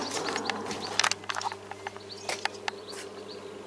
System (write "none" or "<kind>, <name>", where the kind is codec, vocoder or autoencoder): none